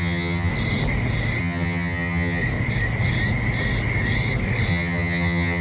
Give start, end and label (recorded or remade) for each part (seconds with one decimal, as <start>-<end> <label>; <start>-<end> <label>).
0.0-0.5 remade; 0.5-1.4 recorded; 1.4-2.4 remade; 2.4-4.7 recorded; 4.7-5.6 remade